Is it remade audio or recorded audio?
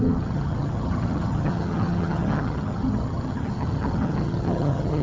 remade